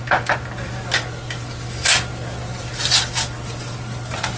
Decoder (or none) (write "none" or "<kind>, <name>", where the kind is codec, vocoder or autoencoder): none